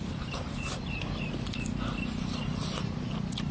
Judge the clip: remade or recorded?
recorded